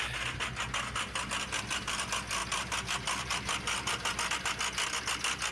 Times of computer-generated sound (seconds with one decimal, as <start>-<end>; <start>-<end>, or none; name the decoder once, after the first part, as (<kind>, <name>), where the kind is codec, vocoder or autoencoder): none